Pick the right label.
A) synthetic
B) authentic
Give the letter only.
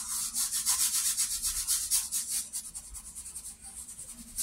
B